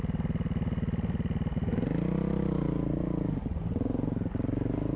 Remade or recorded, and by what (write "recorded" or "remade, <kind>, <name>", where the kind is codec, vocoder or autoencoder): recorded